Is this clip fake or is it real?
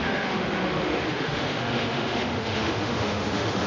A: fake